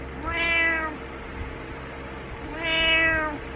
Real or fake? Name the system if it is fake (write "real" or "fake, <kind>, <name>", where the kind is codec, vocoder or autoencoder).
real